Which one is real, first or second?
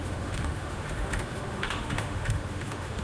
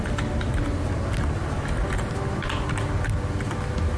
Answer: second